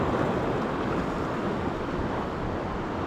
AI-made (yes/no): no